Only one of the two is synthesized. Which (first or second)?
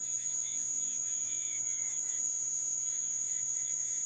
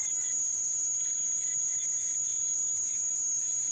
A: first